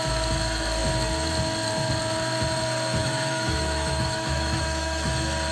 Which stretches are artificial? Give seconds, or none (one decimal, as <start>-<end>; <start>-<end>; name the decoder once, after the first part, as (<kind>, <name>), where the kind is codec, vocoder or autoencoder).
3.0-5.1 (autoencoder, DAC-VAE)